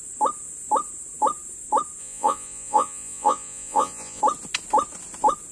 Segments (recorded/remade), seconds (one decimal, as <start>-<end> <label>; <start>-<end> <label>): 0.0-2.0 recorded; 2.0-4.2 remade; 4.2-5.5 recorded